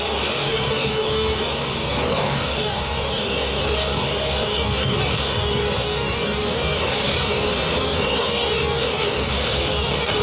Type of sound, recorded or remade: remade